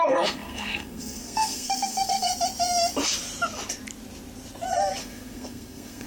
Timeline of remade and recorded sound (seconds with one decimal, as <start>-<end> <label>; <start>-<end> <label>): 0.0-2.3 remade; 2.3-5.0 recorded; 5.0-6.1 remade